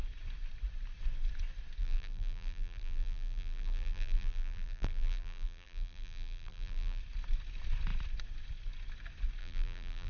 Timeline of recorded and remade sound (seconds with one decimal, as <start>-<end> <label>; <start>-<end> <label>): 0.0-1.8 recorded; 1.8-7.0 remade; 7.0-9.4 recorded; 9.4-10.1 remade